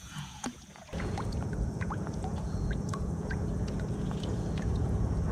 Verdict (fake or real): fake